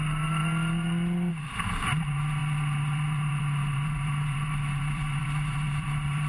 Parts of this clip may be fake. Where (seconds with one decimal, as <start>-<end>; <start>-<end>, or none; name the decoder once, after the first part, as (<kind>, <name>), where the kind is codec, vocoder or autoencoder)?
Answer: 0.0-0.4 (vocoder, BigVGAN v2); 1.3-6.3